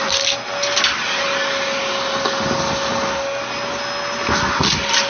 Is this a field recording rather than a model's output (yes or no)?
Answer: yes